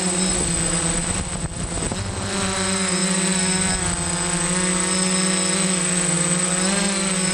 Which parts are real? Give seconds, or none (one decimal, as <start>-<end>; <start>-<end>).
0.0-7.3